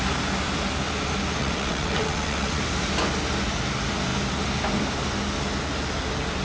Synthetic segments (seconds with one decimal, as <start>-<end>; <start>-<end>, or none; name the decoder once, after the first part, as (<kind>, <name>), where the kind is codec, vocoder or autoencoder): 1.4-2.6 (vocoder, WaveNeXt)